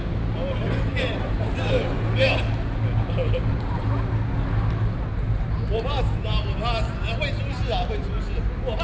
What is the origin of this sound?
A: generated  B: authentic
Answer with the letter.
B